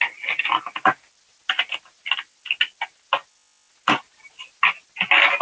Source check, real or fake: real